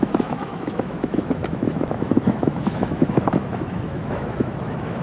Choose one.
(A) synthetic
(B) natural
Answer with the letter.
A